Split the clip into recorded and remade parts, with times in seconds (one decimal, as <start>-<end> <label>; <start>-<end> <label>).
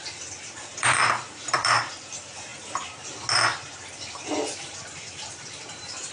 0.0-2.5 remade; 2.5-3.7 recorded; 3.7-6.1 remade